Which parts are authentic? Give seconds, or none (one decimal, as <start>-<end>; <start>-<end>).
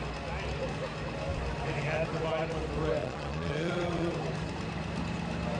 0.0-3.0; 4.1-5.6